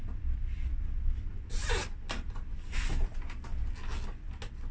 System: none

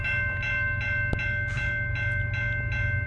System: none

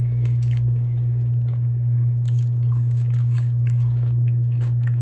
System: codec, DAC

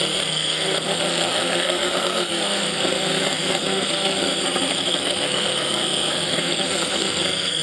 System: codec, SNAC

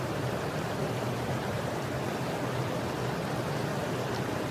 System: none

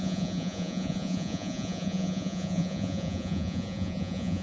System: vocoder, Vocos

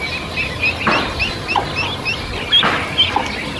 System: none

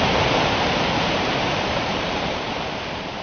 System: vocoder, BigVGAN v2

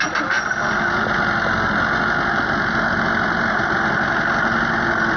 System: none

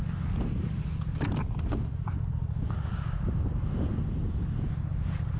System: none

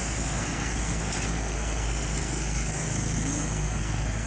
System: codec, SNAC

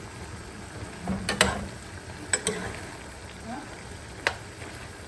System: none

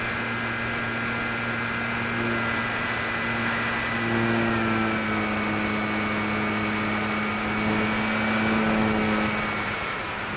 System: none